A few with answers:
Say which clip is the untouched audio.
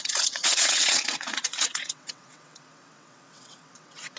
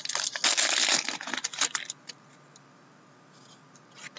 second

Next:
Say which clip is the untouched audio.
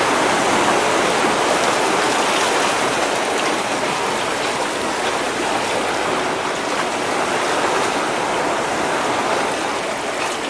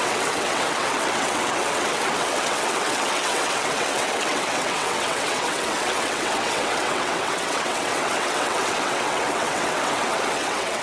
first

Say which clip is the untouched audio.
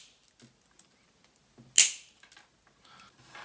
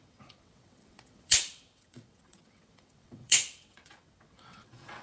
first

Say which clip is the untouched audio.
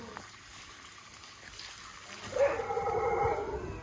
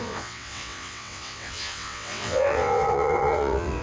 first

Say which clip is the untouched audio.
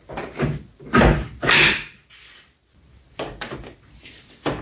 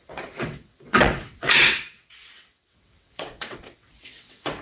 first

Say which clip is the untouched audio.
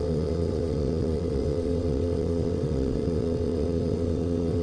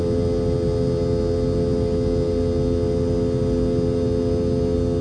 second